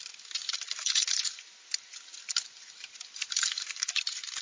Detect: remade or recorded recorded